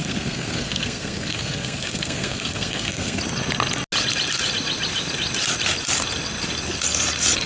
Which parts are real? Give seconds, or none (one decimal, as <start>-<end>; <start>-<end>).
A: 3.2-7.5